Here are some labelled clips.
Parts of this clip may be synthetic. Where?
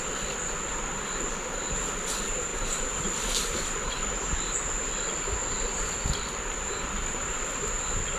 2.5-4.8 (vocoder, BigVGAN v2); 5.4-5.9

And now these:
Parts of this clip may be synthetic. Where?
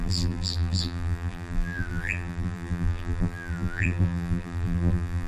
0.0-5.3 (vocoder, BigVGAN v2)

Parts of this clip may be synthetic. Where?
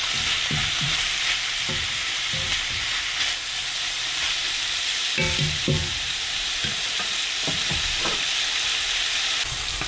0.6-1.2 (vocoder, BigVGAN v2); 2.0-2.8; 3.6-6.6; 7.7-8.3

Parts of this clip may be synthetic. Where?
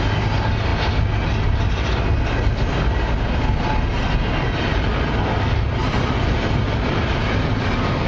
5.8-7.2 (vocoder, BigVGAN v2)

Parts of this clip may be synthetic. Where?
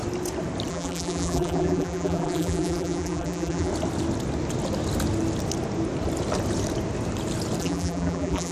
0.7-3.7 (vocoder, BigVGAN v2); 7.6-8.5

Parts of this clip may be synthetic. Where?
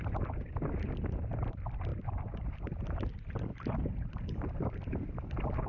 none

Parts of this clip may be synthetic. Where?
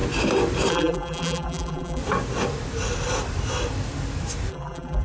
0.7-2.0 (vocoder, BigVGAN v2); 4.5-5.0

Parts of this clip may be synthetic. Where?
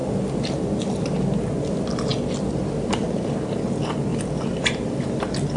0.0-0.8 (vocoder, BigVGAN v2); 4.1-5.1